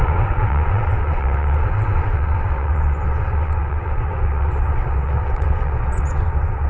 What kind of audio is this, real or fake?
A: fake